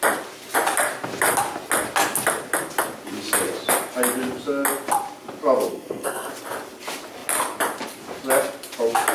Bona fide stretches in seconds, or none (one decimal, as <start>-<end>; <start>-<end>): 0.0-5.7; 6.3-9.1